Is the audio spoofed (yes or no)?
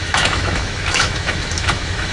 yes